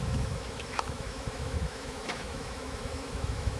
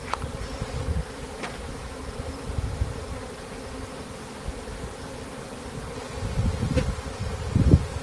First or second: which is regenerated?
first